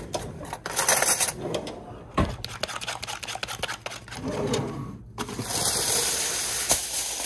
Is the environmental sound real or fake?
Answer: real